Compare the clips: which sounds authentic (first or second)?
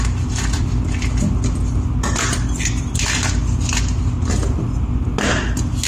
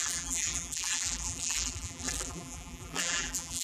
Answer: first